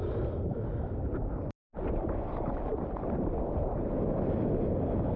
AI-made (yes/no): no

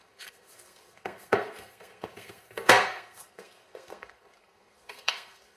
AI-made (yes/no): yes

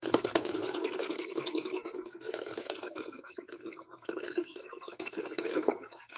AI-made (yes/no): yes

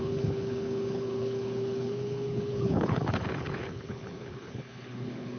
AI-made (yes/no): yes